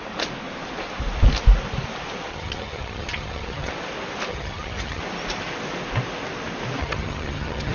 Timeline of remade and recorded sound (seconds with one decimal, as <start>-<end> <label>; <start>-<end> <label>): 0.0-2.3 recorded; 2.3-3.7 remade; 3.7-4.3 recorded; 4.3-5.0 remade; 5.0-6.8 recorded; 6.8-7.7 remade